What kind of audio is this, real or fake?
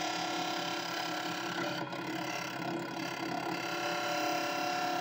real